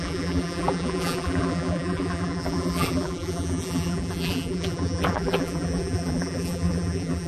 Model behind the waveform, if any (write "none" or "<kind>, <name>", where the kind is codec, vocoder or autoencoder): vocoder, BigVGAN v2